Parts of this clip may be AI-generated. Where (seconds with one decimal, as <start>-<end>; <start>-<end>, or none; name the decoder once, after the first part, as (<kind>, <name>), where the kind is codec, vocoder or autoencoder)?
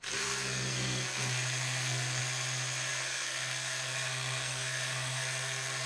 0.0-2.2 (codec, SNAC); 2.9-5.9